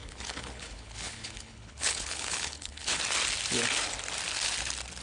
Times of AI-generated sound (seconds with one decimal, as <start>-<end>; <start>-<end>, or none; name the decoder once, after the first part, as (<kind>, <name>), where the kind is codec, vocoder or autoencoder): 0.0-3.0 (codec, HILCodec)